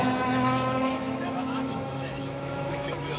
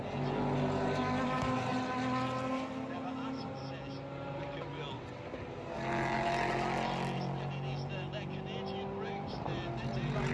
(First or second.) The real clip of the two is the second